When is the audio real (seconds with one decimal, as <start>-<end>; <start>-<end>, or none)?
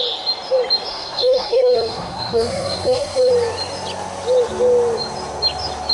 0.0-0.9; 3.3-5.9